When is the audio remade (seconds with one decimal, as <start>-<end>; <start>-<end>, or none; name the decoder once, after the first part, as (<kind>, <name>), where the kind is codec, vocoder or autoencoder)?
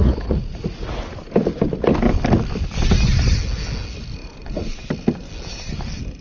0.0-1.0 (vocoder, Vocos); 4.2-4.9